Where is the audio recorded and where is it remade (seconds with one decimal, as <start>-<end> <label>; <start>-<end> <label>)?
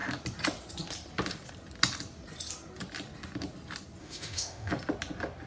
0.0-4.0 recorded; 4.0-4.7 remade; 4.7-5.5 recorded